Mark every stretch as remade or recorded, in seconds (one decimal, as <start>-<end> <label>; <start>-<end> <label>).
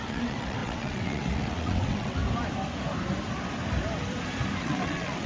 0.0-2.2 remade; 2.2-4.6 recorded; 4.6-5.3 remade